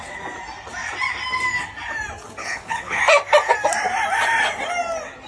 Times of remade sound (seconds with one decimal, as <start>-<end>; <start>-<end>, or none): 2.4-3.0